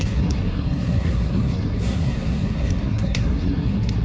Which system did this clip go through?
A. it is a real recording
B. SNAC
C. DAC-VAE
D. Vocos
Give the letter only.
B